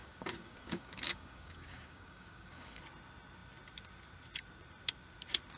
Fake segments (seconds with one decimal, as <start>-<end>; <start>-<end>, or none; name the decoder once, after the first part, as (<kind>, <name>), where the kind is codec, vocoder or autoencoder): 0.0-2.8 (codec, DAC)